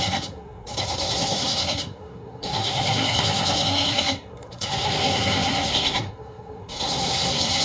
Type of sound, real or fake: fake